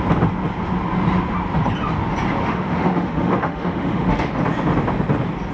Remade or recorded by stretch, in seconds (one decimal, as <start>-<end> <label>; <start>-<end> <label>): 0.0-2.4 recorded; 2.4-4.3 remade; 4.3-5.5 recorded